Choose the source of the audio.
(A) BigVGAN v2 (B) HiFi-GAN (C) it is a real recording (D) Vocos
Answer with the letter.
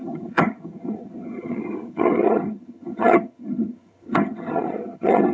B